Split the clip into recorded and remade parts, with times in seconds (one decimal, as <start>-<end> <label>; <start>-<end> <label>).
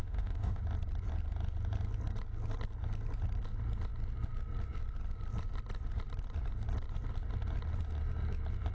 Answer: 0.0-0.6 remade; 0.6-8.7 recorded